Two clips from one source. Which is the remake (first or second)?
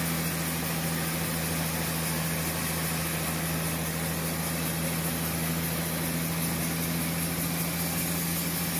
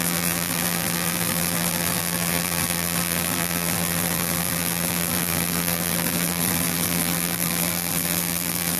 second